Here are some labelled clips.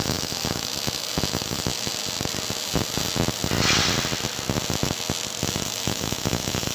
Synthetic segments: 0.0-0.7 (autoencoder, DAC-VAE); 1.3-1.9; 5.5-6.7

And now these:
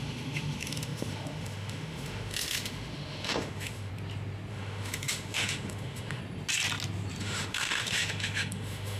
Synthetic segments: 0.0-3.9 (autoencoder, DAC-VAE); 4.5-6.2; 7.2-9.0

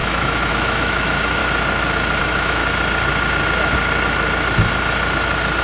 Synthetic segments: 0.0-1.4 (autoencoder, DAC-VAE); 2.2-2.6

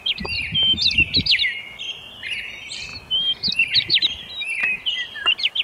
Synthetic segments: none

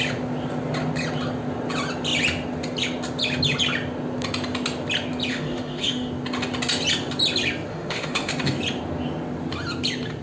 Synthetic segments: 5.3-6.1 (autoencoder, DAC-VAE); 7.7-8.3